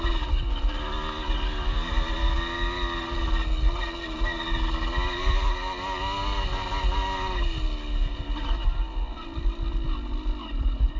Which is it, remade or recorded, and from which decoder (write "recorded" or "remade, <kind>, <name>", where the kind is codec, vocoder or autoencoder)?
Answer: recorded